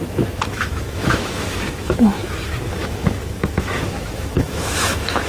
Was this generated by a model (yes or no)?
yes